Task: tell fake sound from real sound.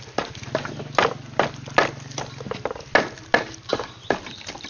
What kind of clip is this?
real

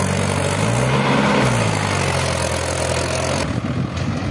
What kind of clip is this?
real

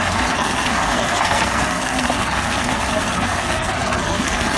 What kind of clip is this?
fake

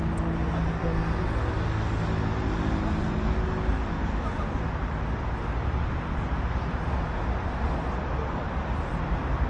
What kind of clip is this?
real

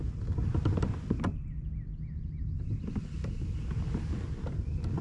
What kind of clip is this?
real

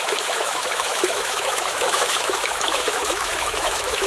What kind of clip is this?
fake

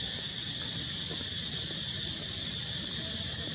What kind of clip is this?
real